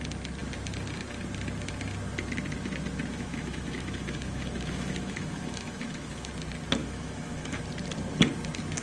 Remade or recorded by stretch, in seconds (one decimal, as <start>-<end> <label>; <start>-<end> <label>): 0.0-3.1 recorded; 3.1-6.3 remade; 6.3-6.8 recorded; 6.8-7.6 remade; 7.6-8.8 recorded